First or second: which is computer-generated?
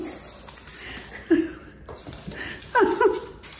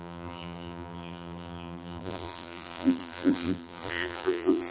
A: second